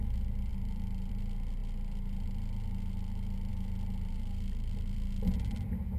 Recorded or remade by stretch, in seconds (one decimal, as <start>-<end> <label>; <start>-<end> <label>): 0.0-6.0 recorded